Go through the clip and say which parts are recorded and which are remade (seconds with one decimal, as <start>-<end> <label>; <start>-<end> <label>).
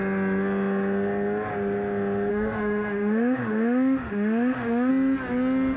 0.0-2.3 recorded; 2.3-4.9 remade; 4.9-5.8 recorded